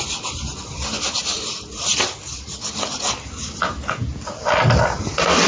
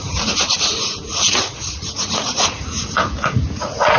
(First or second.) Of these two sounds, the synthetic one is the second